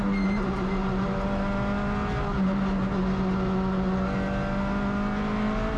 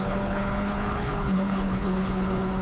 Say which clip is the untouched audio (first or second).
first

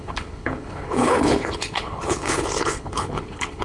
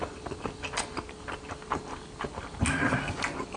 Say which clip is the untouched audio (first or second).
second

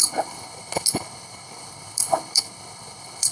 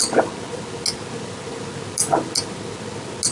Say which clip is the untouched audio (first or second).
second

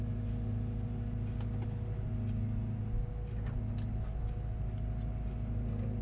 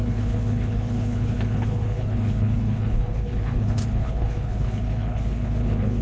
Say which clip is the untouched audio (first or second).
first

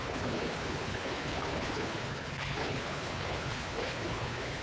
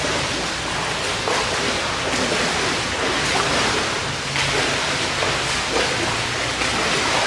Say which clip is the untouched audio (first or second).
second